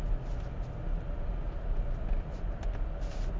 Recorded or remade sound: recorded